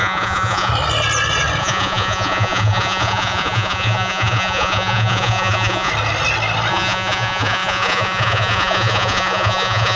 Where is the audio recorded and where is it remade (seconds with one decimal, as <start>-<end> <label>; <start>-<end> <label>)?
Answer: 0.0-0.7 remade; 0.7-1.6 recorded; 1.6-5.9 remade; 5.9-6.7 recorded; 6.7-10.0 remade